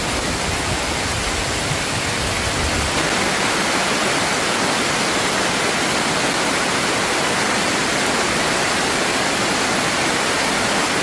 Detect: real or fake real